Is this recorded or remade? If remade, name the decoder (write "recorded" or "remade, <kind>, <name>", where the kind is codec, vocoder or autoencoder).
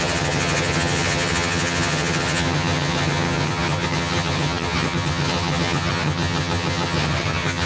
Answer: remade, vocoder, HiFi-GAN